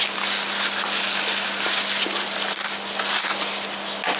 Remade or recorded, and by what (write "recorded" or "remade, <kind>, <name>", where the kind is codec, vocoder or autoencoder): recorded